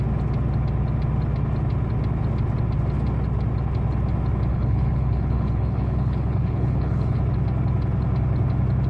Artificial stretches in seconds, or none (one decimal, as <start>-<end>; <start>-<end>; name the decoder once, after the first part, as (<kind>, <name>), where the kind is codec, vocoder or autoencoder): 4.5-7.2 (codec, HILCodec)